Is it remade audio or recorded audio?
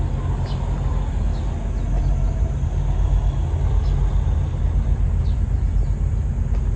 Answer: recorded